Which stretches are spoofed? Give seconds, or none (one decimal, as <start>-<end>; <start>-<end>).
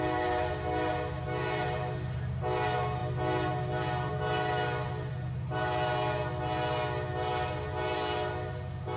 none